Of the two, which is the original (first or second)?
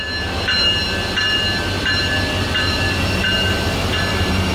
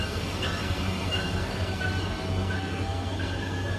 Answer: first